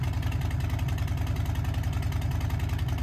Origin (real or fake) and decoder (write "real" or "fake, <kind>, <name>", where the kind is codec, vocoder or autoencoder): real